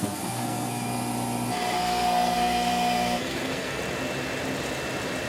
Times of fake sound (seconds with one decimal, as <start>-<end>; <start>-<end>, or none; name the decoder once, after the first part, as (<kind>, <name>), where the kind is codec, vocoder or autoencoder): 0.0-0.9 (codec, SNAC); 1.5-3.8